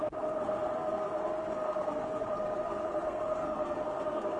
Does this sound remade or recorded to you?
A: remade